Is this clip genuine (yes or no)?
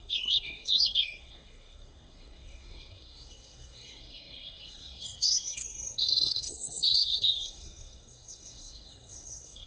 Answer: no